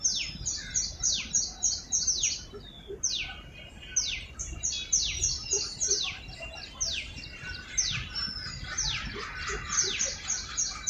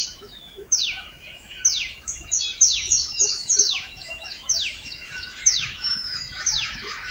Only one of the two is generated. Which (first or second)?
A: second